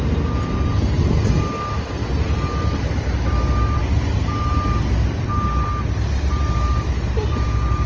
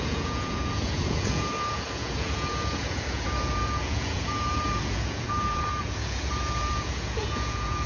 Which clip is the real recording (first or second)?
first